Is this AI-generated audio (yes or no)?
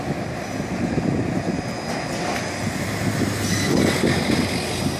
no